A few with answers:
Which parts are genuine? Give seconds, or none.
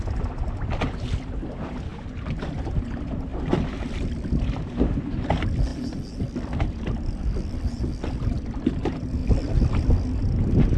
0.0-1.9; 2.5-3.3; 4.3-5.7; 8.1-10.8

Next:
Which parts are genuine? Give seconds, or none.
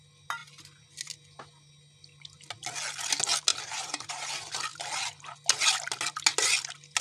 0.0-3.5; 4.3-7.0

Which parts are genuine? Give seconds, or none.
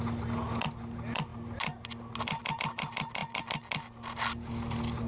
0.0-5.1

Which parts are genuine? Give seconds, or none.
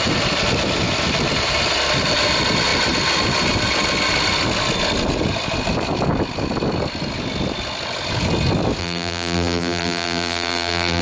0.0-8.8